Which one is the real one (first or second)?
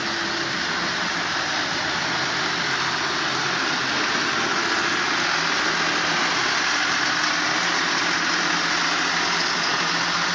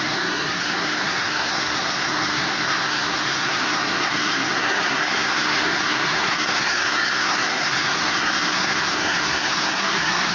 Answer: first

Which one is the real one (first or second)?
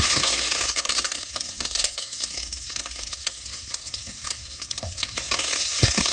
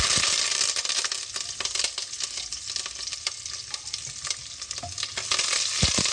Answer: second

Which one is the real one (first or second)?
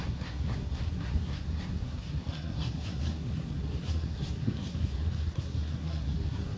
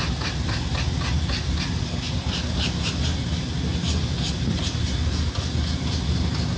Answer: second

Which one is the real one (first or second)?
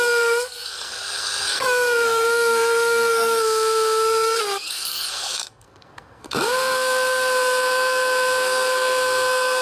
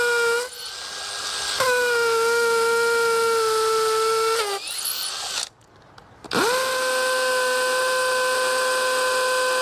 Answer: second